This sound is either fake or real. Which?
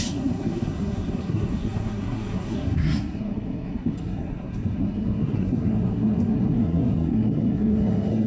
fake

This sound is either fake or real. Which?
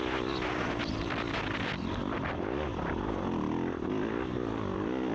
real